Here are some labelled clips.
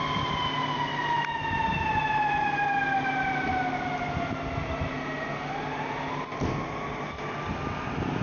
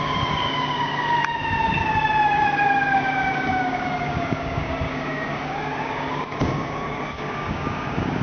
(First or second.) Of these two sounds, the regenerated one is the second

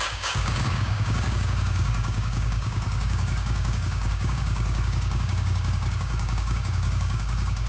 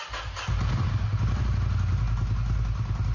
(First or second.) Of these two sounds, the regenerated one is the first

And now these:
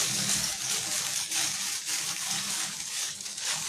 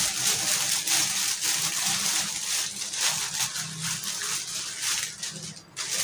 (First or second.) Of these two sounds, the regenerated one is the first